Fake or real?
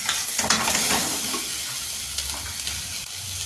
real